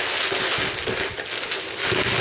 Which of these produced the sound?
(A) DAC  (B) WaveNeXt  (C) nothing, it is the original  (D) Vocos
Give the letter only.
C